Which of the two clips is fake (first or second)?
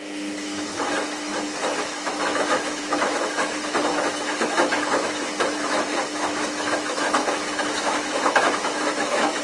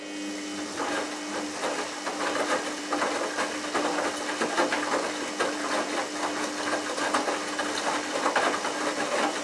first